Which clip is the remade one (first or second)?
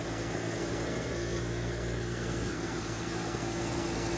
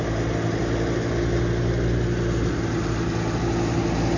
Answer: first